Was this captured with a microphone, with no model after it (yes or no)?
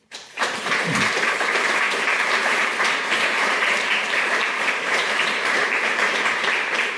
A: no